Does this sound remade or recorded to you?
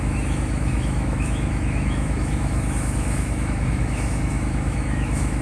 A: remade